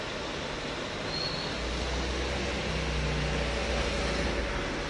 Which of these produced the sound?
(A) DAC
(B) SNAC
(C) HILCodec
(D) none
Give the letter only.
D